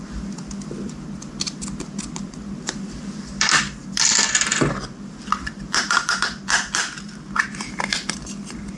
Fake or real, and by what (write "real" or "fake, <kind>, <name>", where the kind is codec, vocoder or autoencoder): fake, vocoder, BigVGAN v2